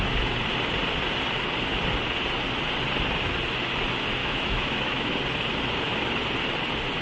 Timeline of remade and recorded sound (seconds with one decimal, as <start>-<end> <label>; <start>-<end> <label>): 0.0-4.2 recorded; 4.2-5.1 remade; 5.1-7.0 recorded